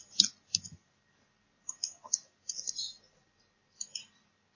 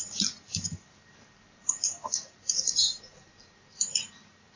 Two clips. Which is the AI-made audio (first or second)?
second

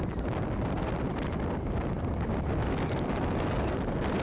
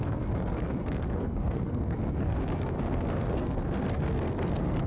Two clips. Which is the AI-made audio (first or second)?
second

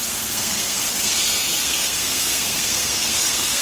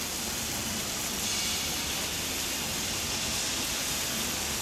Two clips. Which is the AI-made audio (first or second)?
first